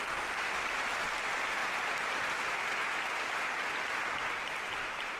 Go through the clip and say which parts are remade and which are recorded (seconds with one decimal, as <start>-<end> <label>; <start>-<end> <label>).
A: 0.0-5.2 recorded